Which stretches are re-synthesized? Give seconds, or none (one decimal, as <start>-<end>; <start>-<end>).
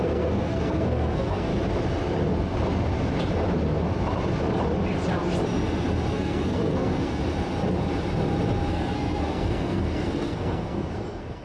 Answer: 0.0-1.5; 6.1-7.2; 8.7-11.4